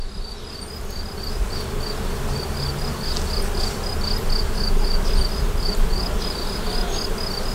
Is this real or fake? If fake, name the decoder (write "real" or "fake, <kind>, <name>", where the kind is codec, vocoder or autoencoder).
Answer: real